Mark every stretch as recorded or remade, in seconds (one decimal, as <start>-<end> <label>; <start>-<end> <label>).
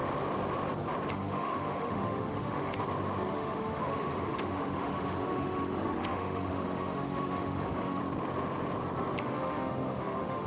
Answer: 0.0-1.1 recorded; 1.1-2.8 remade; 2.8-3.3 recorded; 3.3-8.0 remade; 8.0-9.2 recorded; 9.2-10.5 remade